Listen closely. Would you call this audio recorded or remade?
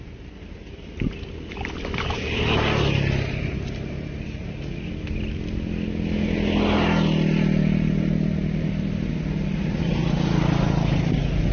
recorded